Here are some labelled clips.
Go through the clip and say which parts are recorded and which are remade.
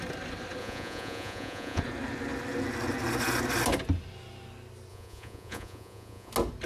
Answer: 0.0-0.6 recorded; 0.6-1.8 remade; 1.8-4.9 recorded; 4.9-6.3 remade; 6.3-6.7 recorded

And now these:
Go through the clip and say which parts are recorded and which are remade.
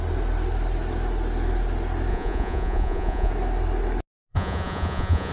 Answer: 0.0-2.1 recorded; 2.1-3.3 remade; 3.3-4.3 recorded; 4.3-5.3 remade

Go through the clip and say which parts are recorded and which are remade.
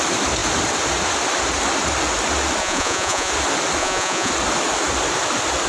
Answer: 0.0-2.6 recorded; 2.6-3.3 remade; 3.3-3.8 recorded; 3.8-4.3 remade; 4.3-5.7 recorded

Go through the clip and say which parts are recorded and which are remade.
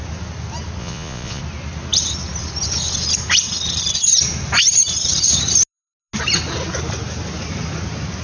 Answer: 0.0-0.8 recorded; 0.8-1.4 remade; 1.4-8.2 recorded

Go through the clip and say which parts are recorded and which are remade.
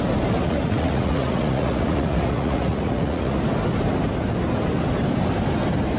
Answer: 0.0-0.4 recorded; 0.4-3.4 remade; 3.4-6.0 recorded